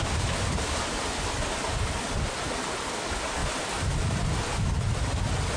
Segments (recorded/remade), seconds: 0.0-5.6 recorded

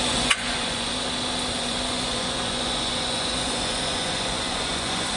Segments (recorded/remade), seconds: 0.0-0.9 remade; 0.9-1.5 recorded; 1.5-5.2 remade

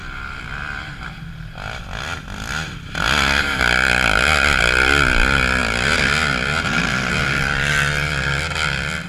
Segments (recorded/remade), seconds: 0.0-9.1 recorded

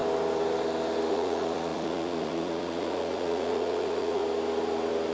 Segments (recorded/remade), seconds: 0.0-1.1 recorded; 1.1-4.2 remade; 4.2-5.1 recorded

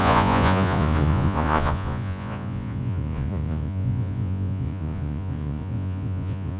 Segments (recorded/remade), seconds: 0.0-6.6 remade